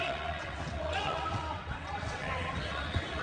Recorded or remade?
remade